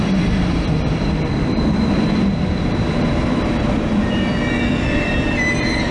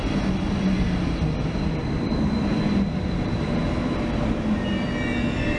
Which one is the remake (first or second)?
first